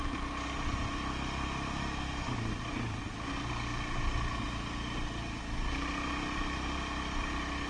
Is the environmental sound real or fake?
real